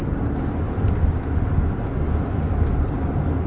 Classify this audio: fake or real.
real